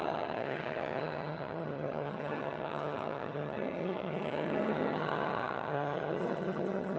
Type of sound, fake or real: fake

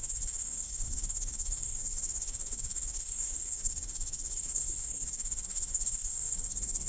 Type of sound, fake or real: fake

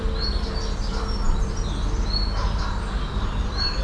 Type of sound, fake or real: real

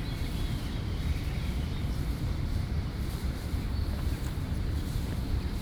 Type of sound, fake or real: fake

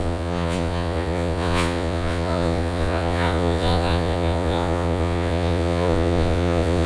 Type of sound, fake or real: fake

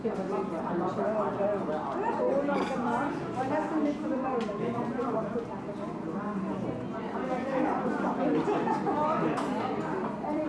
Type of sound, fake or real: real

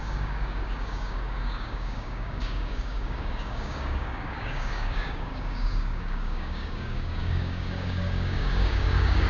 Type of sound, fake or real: fake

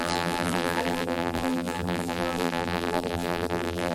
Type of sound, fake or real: fake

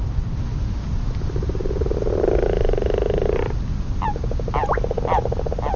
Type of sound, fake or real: real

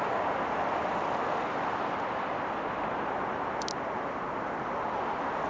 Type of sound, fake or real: real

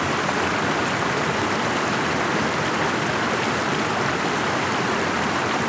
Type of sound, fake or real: real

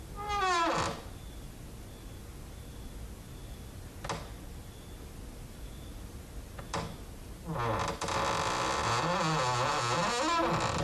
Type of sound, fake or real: real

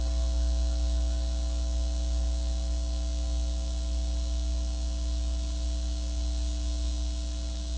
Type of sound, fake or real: real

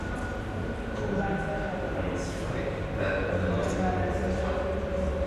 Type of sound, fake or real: real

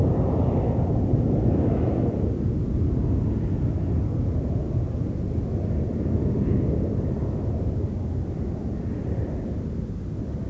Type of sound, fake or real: real